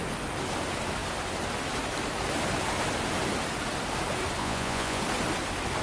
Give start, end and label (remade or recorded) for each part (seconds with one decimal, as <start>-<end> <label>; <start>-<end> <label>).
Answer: 0.0-4.4 recorded; 4.4-5.0 remade; 5.0-5.8 recorded